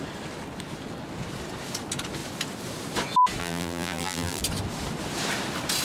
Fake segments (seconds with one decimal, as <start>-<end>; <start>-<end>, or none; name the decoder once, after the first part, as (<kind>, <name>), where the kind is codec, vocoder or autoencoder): 3.4-4.4 (vocoder, BigVGAN v2)